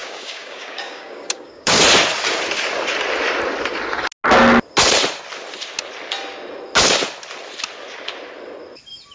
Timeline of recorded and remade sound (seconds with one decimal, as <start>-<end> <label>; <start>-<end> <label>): 0.0-1.8 remade; 1.8-9.1 recorded